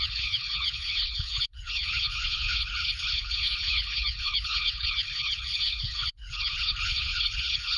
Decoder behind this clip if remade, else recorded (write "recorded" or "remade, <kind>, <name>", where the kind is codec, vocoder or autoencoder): remade, codec, HILCodec